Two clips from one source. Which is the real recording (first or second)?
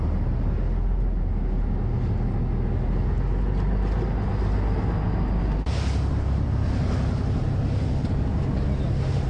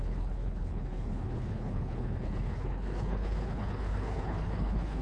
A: first